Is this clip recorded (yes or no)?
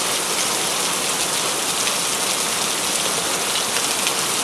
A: yes